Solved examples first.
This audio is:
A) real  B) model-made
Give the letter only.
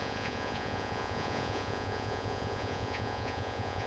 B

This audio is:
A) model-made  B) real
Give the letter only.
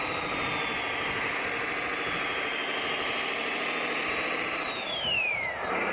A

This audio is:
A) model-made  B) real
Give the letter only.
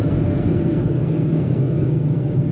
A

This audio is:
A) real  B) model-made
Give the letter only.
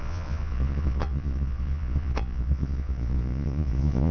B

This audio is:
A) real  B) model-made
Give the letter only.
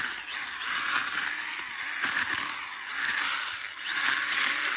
A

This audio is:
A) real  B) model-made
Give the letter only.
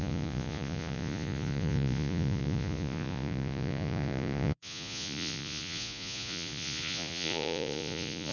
B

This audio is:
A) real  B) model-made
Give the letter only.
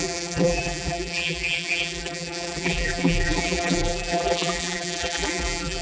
B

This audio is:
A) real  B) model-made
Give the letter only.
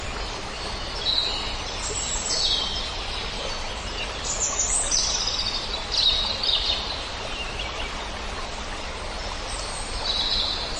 A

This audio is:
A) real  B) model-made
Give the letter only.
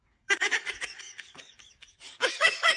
B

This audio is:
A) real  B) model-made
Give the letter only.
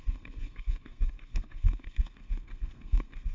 B